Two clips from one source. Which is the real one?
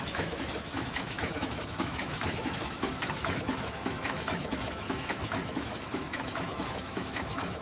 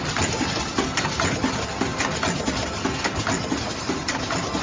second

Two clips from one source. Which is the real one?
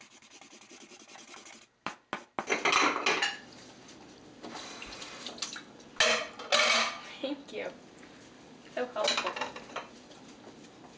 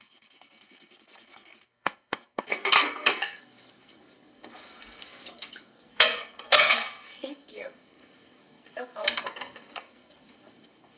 first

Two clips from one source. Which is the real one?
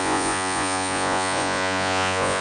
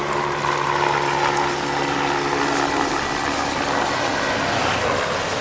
second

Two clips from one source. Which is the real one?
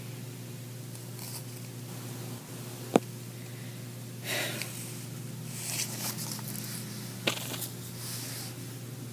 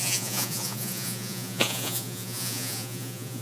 first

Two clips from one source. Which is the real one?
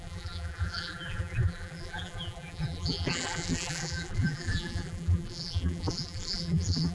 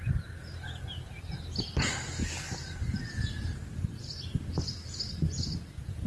second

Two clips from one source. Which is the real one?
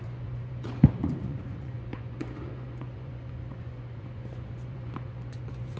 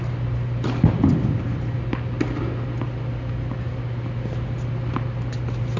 second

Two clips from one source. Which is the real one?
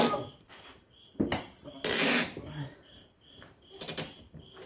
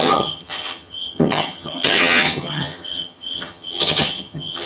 first